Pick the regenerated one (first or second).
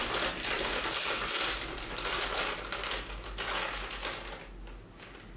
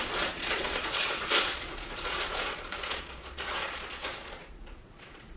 second